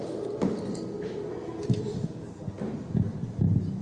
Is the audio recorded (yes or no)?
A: yes